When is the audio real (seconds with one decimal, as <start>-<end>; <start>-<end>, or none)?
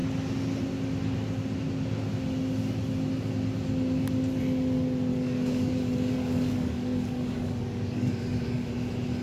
0.0-5.1; 8.7-9.2